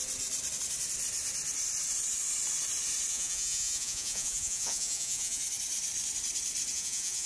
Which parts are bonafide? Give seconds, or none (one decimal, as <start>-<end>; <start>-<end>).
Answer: 0.0-3.1; 5.4-6.7